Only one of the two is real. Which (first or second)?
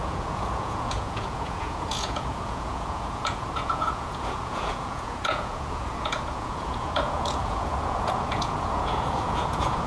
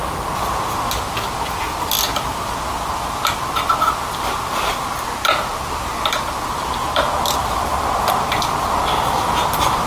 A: second